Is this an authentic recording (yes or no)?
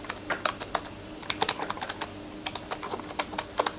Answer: yes